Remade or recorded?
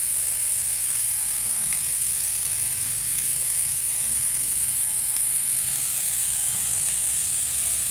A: remade